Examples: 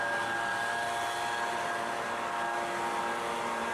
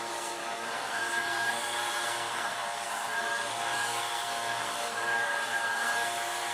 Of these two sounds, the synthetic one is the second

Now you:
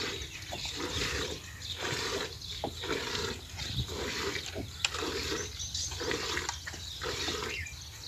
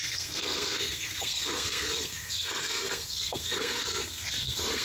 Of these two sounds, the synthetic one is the second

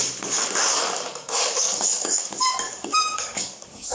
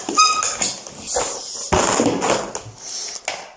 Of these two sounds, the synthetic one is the first